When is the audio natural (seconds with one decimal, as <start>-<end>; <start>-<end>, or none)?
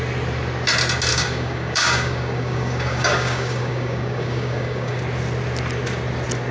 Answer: 0.0-1.1; 5.0-6.5